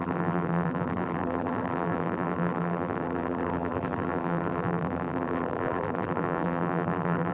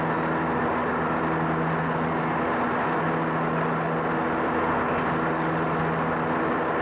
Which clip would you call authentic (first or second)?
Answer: second